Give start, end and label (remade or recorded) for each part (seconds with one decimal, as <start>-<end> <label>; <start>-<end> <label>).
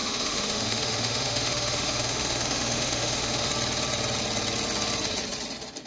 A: 0.0-3.5 remade; 3.5-5.9 recorded